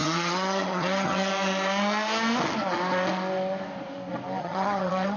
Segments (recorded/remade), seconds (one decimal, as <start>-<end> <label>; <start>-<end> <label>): 0.0-1.3 remade; 1.3-4.4 recorded; 4.4-5.2 remade